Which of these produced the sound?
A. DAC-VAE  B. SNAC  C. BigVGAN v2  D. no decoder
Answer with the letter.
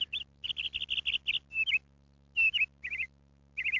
D